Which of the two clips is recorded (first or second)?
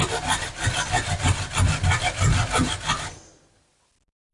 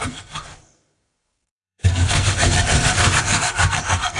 first